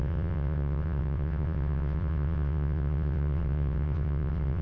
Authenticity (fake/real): fake